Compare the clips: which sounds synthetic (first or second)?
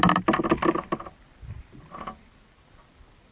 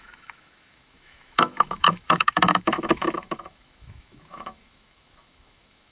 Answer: second